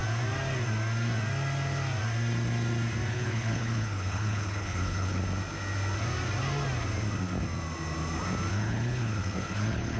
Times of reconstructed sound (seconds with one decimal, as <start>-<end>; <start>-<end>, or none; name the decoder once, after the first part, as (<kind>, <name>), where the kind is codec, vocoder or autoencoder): 3.1-5.2 (codec, HILCodec); 8.5-10.0